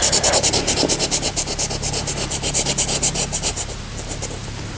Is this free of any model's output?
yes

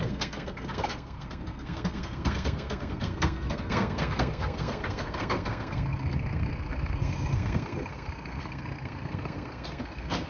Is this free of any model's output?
no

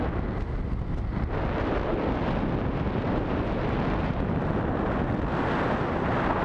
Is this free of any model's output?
yes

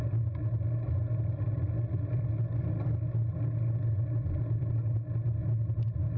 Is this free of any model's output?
yes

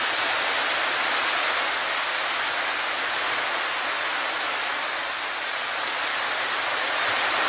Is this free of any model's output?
yes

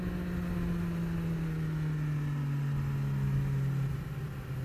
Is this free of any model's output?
yes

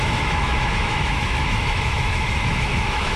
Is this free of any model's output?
no